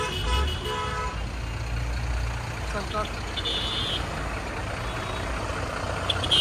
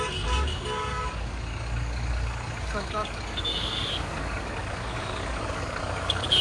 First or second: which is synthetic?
second